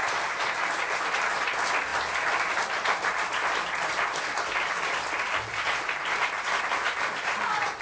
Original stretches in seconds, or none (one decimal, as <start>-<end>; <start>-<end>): 0.0-7.8